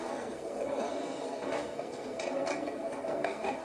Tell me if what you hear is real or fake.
fake